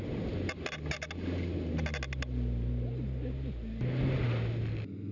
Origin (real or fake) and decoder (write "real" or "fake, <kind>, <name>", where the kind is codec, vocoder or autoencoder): real